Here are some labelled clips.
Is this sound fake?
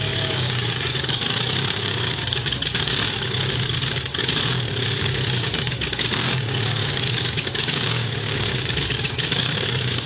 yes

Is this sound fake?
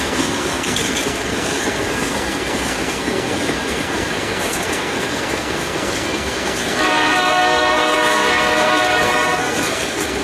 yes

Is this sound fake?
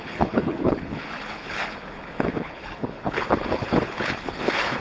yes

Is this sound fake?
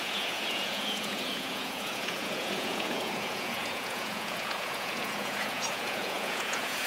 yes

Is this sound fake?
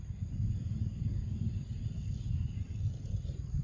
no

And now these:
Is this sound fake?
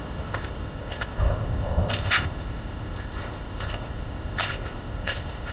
yes